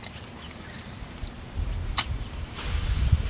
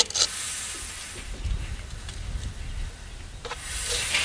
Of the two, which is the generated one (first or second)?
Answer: first